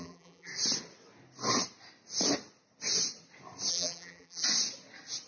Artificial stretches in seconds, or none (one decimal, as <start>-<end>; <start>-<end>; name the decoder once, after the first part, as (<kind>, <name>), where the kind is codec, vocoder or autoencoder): 0.0-0.5 (vocoder, BigVGAN v2); 3.7-4.4